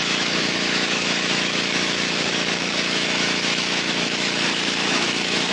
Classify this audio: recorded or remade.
remade